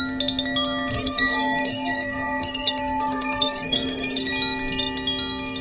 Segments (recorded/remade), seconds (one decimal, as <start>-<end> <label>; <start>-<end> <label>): 0.0-0.9 recorded; 0.9-4.3 remade; 4.3-5.6 recorded